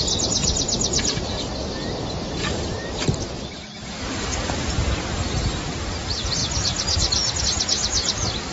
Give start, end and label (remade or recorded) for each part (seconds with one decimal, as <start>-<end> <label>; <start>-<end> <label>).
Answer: 0.0-6.4 remade; 6.4-7.4 recorded; 7.4-8.5 remade